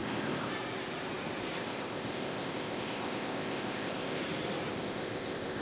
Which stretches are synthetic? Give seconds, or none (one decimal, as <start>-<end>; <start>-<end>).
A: 0.0-0.5; 1.6-4.2; 4.7-5.6